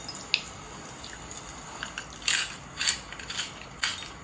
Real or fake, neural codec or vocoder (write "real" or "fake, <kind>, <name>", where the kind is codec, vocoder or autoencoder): real